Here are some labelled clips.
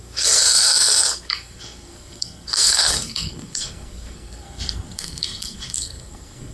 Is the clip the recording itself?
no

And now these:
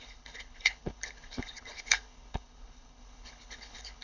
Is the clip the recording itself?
no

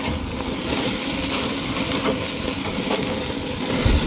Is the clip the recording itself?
yes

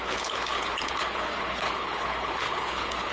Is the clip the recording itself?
no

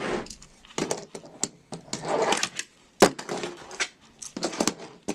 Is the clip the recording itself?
yes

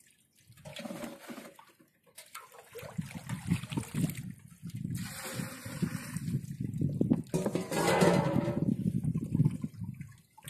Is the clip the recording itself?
yes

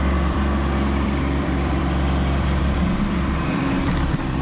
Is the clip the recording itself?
no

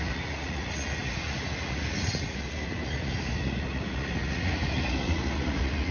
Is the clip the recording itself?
no